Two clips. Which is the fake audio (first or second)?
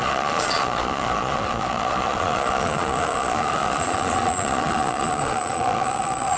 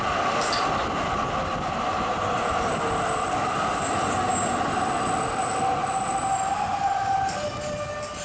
first